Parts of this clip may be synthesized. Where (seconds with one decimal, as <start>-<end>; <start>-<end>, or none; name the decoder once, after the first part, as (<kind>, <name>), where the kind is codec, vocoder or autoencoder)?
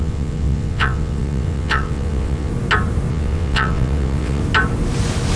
0.0-2.5 (vocoder, WaveNeXt); 3.1-4.4